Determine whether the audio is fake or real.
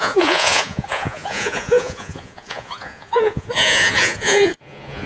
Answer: fake